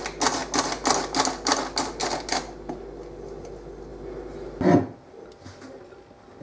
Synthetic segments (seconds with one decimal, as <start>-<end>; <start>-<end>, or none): none

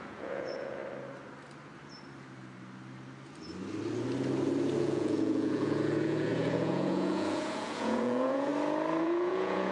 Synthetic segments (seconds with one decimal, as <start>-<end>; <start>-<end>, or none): 0.0-0.8; 4.8-8.5; 9.0-9.7

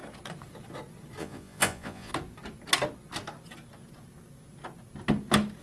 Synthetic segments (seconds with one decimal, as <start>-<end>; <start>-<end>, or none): 1.2-2.1

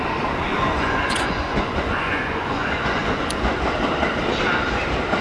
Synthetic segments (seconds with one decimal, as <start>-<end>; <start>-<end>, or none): 0.5-3.6

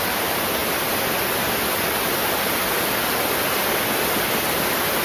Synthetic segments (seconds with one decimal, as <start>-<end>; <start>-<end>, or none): none

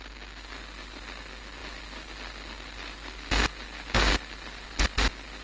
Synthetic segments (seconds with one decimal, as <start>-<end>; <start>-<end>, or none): none